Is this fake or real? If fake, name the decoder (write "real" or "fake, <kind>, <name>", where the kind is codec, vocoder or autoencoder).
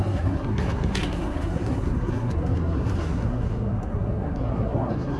fake, codec, SNAC